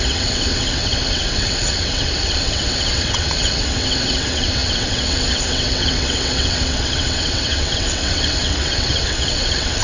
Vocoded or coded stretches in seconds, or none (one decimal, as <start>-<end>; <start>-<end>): 0.0-9.8